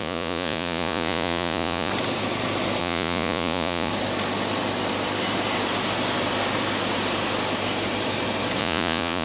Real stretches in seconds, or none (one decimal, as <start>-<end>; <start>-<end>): 1.9-2.8; 3.9-8.6